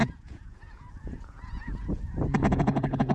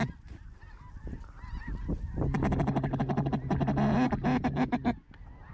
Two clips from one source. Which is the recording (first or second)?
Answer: second